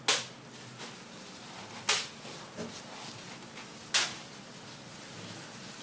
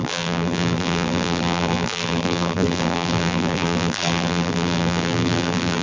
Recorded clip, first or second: first